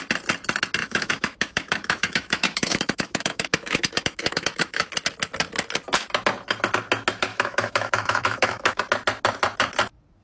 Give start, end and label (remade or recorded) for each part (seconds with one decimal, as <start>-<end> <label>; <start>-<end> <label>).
0.0-0.8 recorded; 0.8-4.9 remade; 4.9-7.3 recorded; 7.3-8.8 remade; 8.8-10.2 recorded